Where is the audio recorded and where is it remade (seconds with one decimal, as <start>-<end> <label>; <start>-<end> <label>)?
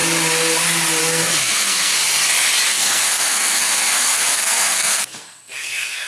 0.0-1.0 recorded; 1.0-1.9 remade; 1.9-2.7 recorded; 2.7-6.1 remade